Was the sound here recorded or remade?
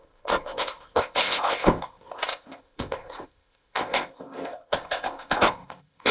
remade